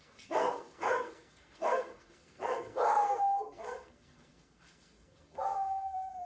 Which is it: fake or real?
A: fake